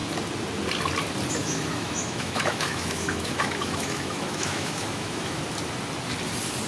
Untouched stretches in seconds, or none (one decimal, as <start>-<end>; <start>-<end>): 0.0-1.4; 5.4-6.7